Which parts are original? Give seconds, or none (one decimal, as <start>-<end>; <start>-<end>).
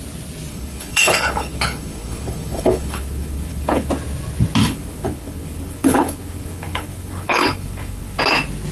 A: 0.0-0.5; 3.9-4.6; 8.2-8.7